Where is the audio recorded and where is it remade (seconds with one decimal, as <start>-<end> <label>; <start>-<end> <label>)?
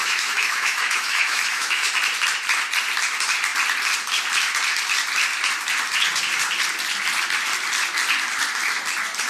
0.0-1.9 remade; 1.9-9.3 recorded